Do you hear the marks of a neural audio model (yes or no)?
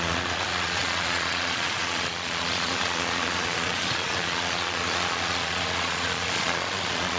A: yes